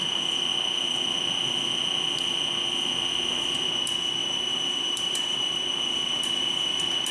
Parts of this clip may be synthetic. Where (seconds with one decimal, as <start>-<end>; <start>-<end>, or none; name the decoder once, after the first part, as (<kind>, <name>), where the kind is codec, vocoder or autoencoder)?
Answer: 4.2-7.1 (vocoder, BigVGAN v2)